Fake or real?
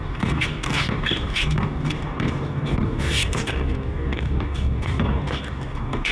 fake